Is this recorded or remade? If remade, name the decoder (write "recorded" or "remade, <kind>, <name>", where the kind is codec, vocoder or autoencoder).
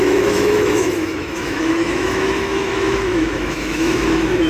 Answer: remade, autoencoder, DAC-VAE